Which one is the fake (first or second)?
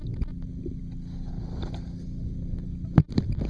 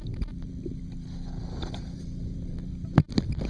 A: second